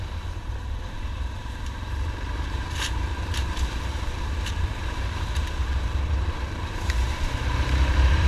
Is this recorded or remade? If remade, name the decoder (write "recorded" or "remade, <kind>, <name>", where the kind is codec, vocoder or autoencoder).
remade, vocoder, BigVGAN v2